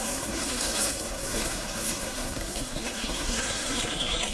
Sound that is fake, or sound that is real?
fake